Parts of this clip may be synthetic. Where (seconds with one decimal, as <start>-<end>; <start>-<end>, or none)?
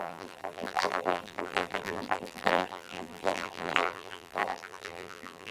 0.0-5.5